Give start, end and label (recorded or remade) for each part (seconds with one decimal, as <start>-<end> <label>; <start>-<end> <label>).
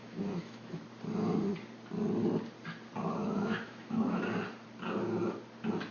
0.0-0.8 remade; 0.8-3.2 recorded; 3.2-4.2 remade; 4.2-5.9 recorded